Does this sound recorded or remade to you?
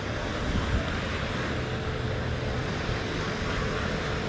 recorded